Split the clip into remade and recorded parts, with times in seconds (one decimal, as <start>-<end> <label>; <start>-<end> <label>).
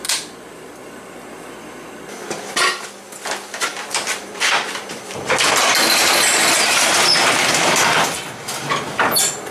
0.0-3.7 recorded; 3.7-7.8 remade; 7.8-9.5 recorded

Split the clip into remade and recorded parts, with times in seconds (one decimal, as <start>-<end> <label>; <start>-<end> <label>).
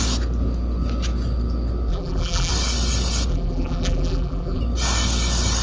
0.0-1.9 recorded; 1.9-2.5 remade; 2.5-3.3 recorded; 3.3-4.6 remade; 4.6-5.6 recorded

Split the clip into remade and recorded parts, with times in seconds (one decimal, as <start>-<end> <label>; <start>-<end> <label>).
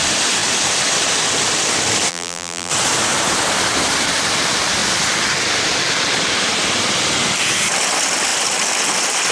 0.0-2.1 recorded; 2.1-2.7 remade; 2.7-9.3 recorded